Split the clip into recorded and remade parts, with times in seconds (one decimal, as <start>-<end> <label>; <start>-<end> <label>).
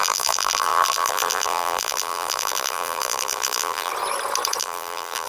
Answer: 0.0-3.9 remade; 3.9-4.6 recorded; 4.6-5.3 remade